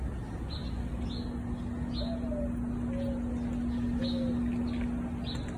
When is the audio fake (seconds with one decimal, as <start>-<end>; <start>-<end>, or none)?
none